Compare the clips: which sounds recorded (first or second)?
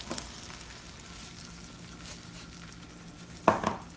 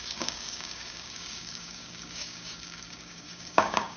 first